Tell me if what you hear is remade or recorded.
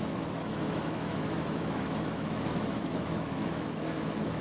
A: remade